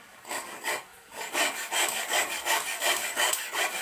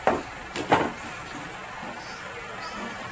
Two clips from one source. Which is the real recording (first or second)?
second